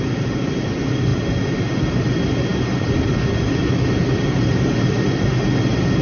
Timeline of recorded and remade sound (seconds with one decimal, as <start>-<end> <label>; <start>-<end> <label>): 0.0-6.0 recorded